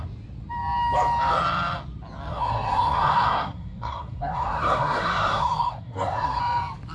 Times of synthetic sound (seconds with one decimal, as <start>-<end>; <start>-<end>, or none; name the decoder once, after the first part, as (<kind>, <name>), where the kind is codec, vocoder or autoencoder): 2.3-6.4 (codec, SNAC)